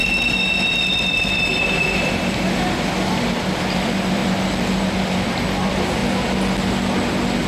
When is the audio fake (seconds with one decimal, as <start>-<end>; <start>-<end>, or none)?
0.0-4.2; 4.8-6.0